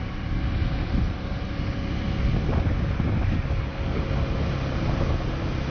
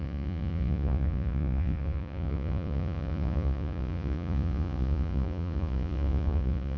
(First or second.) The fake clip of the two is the second